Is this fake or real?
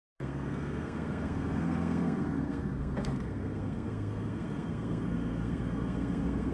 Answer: fake